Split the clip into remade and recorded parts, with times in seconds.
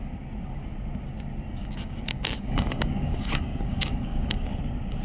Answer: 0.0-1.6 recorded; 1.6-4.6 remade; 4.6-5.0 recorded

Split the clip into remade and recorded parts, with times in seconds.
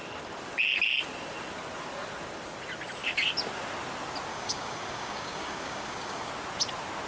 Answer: 0.0-4.3 recorded; 4.3-6.3 remade; 6.3-7.1 recorded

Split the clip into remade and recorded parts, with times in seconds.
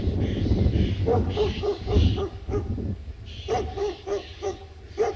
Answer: 0.0-1.1 recorded; 1.1-3.1 remade; 3.1-3.8 recorded; 3.8-4.8 remade; 4.8-5.2 recorded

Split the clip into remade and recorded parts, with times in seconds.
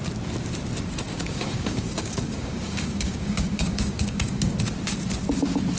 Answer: 0.0-1.1 recorded; 1.1-4.6 remade; 4.6-5.8 recorded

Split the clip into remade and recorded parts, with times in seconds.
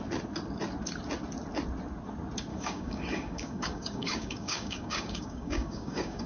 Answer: 0.0-2.5 recorded; 2.5-6.3 remade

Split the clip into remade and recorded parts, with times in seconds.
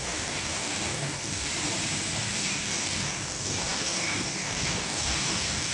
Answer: 0.0-1.5 remade; 1.5-2.3 recorded; 2.3-5.7 remade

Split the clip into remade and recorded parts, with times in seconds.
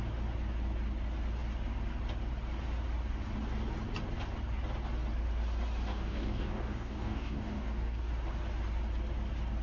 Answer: 0.0-5.9 recorded; 5.9-8.1 remade; 8.1-9.6 recorded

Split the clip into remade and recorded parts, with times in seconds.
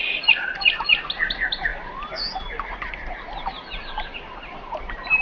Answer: 0.0-5.2 recorded